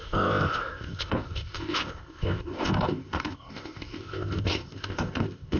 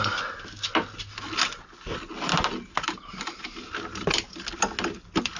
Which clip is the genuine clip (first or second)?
second